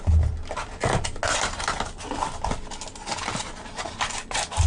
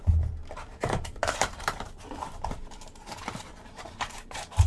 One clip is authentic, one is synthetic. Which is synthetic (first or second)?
second